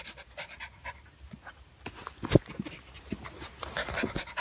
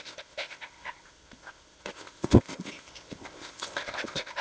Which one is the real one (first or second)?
first